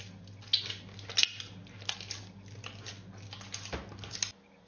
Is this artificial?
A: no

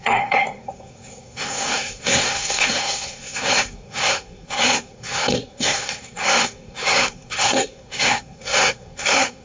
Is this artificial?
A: yes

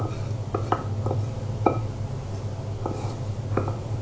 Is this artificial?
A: no